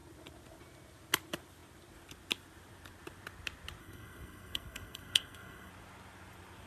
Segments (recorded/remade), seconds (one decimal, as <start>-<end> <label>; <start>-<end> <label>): 0.0-3.8 recorded; 3.8-5.7 remade; 5.7-6.7 recorded